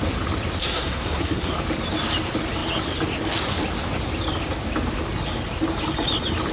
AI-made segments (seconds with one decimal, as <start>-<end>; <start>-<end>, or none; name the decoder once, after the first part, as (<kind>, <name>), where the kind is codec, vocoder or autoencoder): 0.6-1.5 (codec, SNAC)